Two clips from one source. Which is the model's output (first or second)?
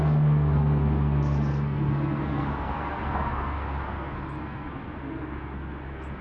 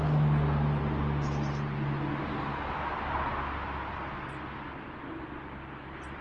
first